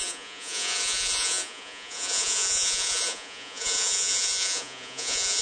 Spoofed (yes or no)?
yes